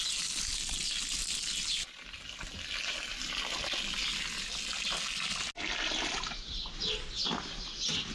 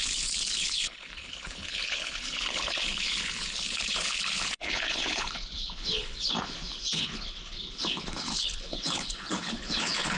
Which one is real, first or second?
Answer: first